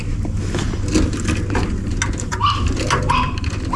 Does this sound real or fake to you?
real